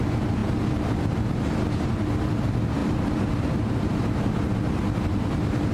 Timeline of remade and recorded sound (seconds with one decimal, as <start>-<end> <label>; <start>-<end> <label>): 0.0-5.7 recorded